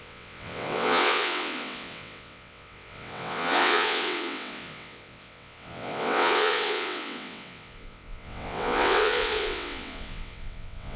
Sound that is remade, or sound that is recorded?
remade